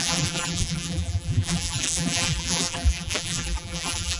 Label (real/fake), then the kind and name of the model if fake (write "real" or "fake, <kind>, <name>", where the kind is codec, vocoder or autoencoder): fake, vocoder, BigVGAN v2